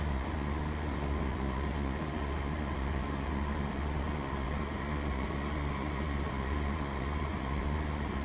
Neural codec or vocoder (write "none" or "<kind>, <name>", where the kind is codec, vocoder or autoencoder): vocoder, Vocos